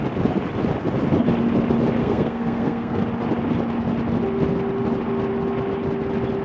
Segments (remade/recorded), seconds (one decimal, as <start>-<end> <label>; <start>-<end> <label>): 0.0-2.0 recorded; 2.0-3.0 remade; 3.0-6.4 recorded